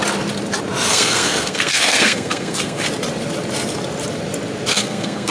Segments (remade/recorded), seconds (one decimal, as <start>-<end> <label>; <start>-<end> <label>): 0.0-0.9 recorded; 0.9-2.9 remade; 2.9-4.7 recorded; 4.7-5.3 remade